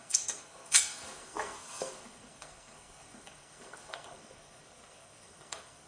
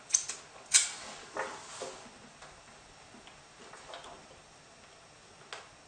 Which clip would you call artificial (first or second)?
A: first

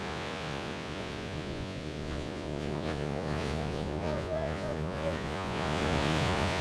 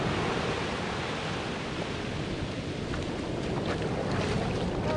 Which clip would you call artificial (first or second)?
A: first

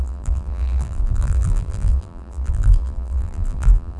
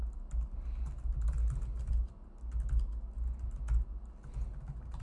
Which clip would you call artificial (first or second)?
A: first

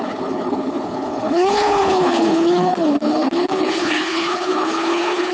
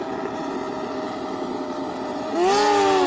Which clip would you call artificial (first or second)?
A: first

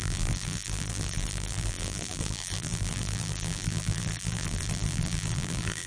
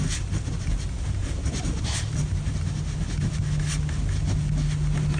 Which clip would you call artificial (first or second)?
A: first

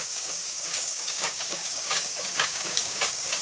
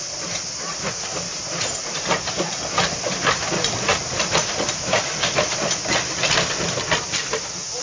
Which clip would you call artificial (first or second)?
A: first